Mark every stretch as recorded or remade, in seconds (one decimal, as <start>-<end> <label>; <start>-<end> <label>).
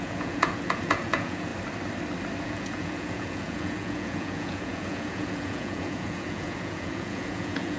0.0-1.5 remade; 1.5-2.4 recorded; 2.4-7.8 remade